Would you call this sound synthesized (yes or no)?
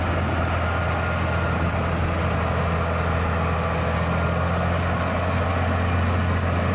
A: no